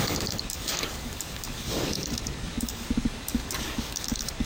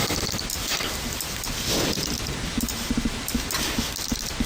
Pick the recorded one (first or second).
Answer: second